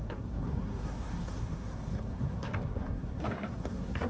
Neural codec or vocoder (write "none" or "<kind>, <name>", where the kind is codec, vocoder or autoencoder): codec, SNAC